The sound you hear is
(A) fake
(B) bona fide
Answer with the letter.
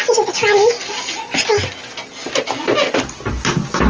B